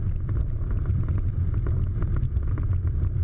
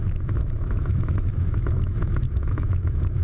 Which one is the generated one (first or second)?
second